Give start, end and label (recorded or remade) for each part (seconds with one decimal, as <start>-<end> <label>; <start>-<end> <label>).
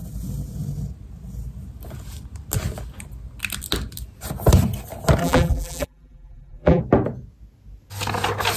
0.0-5.2 recorded; 5.2-6.8 remade; 6.8-8.6 recorded